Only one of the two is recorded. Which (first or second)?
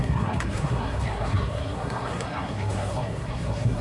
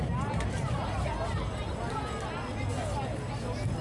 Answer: second